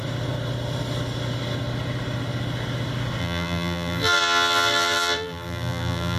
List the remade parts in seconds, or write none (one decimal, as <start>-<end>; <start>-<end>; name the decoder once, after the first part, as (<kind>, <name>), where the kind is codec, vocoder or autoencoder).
3.2-6.2 (vocoder, BigVGAN v2)